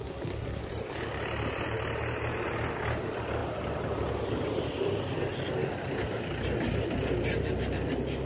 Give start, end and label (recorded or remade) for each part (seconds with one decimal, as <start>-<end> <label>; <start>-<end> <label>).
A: 0.0-0.6 remade; 0.6-8.3 recorded